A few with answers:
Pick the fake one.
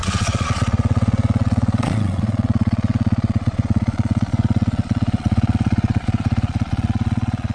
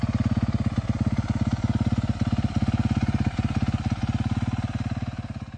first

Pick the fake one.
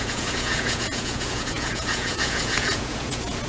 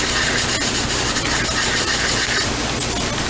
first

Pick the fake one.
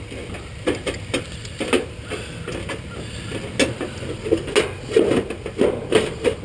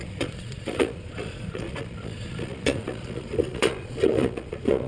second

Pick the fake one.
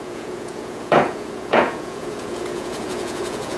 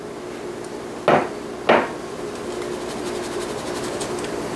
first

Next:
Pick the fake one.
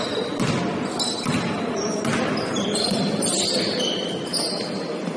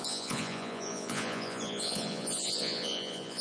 second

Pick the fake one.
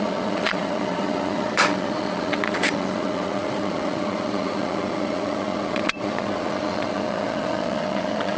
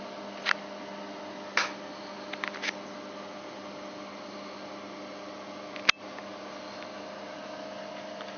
first